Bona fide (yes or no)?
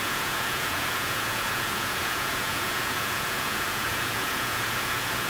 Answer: no